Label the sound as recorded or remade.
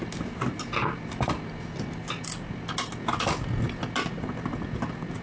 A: recorded